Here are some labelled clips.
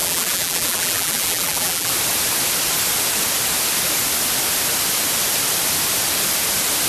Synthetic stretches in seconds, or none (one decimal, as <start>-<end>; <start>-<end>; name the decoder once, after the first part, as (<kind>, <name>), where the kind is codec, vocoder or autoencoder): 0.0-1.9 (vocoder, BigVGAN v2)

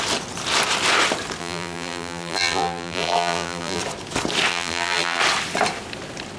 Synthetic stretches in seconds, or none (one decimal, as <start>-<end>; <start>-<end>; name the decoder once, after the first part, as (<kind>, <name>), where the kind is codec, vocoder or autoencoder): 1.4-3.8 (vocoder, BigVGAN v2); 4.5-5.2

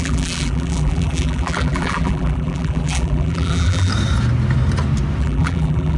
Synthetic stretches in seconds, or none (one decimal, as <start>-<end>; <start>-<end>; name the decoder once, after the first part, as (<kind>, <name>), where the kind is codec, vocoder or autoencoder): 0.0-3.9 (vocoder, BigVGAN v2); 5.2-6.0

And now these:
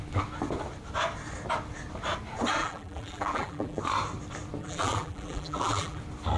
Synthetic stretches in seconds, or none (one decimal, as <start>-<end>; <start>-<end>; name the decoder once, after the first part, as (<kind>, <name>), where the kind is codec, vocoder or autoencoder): 2.6-3.8 (vocoder, BigVGAN v2); 4.6-6.0

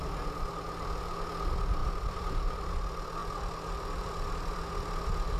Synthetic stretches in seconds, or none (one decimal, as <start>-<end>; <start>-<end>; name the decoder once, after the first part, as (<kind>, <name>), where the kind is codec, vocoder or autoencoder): 1.8-2.7 (vocoder, BigVGAN v2); 3.2-4.7

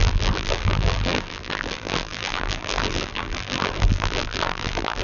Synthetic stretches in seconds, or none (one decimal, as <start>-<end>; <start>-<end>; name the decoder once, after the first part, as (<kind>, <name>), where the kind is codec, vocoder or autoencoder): 0.0-5.0 (vocoder, BigVGAN v2)